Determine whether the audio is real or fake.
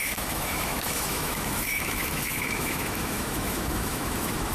fake